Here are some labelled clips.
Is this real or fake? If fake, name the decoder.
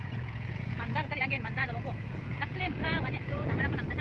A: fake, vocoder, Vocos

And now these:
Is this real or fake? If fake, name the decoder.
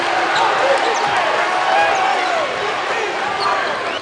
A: real